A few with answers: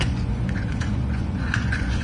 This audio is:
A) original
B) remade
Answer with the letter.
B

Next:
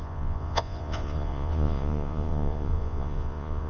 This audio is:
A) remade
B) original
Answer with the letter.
A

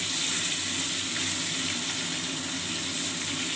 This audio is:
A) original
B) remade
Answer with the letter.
A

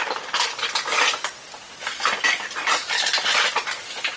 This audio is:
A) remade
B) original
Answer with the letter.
B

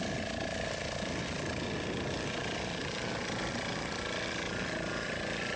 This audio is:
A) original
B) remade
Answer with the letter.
A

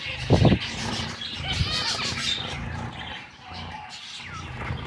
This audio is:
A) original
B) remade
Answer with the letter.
A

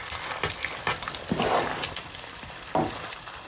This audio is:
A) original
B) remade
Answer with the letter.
A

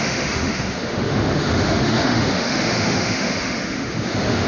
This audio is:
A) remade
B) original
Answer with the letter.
A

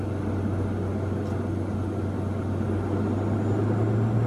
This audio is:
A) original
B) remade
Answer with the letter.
A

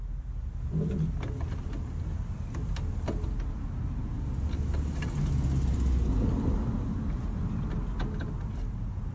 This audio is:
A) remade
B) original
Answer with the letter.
B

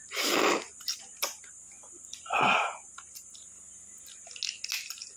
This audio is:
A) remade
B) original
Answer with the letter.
B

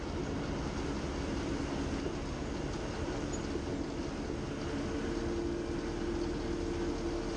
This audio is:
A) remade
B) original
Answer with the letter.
B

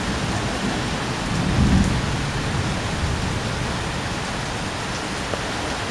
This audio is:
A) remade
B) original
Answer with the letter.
B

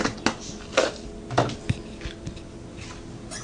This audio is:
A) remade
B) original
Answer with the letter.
B